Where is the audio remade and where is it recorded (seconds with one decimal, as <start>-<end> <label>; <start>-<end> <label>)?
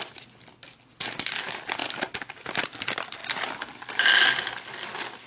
0.0-5.3 recorded